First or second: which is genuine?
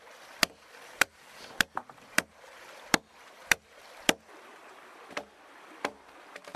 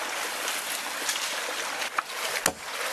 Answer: second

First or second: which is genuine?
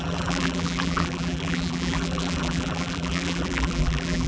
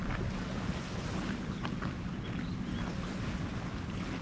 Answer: second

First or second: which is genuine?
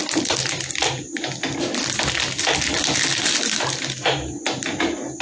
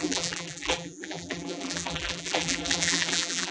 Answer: first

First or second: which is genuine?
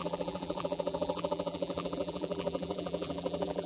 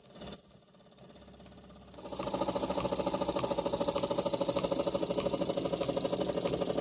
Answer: second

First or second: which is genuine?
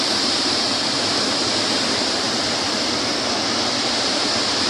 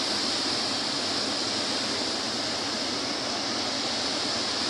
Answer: second